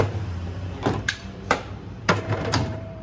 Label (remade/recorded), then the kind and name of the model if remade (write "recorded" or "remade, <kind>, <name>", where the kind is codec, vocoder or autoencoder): remade, vocoder, BigVGAN v2